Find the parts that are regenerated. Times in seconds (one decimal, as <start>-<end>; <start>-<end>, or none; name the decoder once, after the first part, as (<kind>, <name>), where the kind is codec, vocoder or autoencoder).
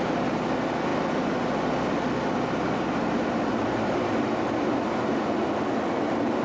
none